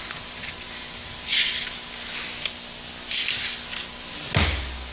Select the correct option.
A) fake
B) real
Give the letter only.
B